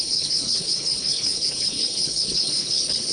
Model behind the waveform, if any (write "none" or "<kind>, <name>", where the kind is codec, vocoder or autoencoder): codec, HILCodec